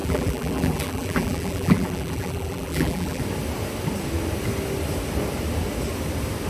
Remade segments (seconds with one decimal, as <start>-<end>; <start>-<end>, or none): 0.0-3.2